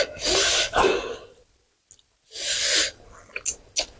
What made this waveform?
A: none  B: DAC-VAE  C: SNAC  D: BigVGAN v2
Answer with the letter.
A